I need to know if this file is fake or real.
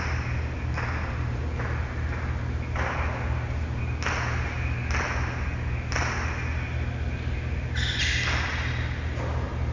real